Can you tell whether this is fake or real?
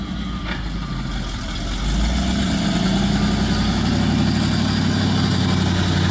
real